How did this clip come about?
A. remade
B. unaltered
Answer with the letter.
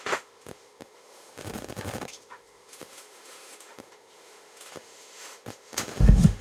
A